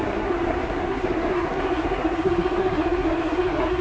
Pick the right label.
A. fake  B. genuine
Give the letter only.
A